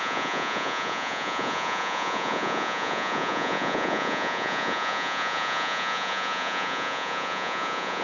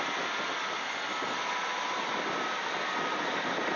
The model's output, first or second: first